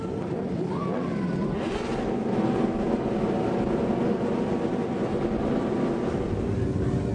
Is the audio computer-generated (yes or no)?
no